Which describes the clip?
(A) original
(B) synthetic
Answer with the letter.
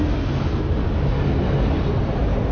A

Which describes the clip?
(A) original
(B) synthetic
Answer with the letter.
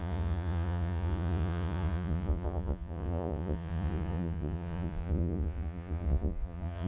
B